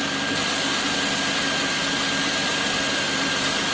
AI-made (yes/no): no